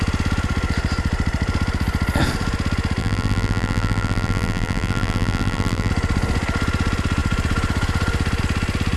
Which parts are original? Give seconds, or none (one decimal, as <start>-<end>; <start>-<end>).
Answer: 0.0-3.0; 5.9-9.0